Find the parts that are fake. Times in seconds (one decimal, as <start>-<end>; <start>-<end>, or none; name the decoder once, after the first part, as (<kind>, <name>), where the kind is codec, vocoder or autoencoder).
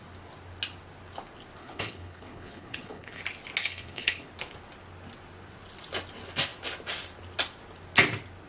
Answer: 1.6-3.2 (codec, HILCodec); 3.6-4.3